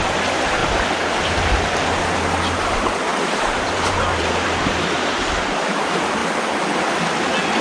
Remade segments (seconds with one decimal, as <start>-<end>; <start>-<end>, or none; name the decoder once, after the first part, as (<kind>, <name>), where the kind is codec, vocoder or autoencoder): 0.0-0.6 (vocoder, BigVGAN v2); 2.5-6.2